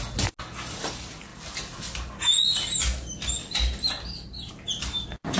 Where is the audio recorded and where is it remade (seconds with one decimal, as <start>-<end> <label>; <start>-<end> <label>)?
0.0-5.4 recorded